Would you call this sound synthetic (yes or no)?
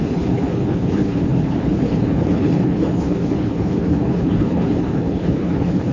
yes